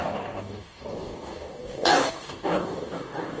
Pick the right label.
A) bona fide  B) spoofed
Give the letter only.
B